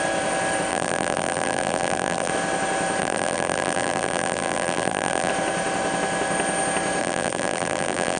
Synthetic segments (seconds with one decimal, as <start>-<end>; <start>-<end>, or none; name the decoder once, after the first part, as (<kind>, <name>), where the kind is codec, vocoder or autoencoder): 0.7-2.3 (vocoder, BigVGAN v2); 3.0-5.3; 7.0-8.2